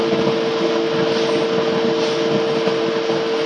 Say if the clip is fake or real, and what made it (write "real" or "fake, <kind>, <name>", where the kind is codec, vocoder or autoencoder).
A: real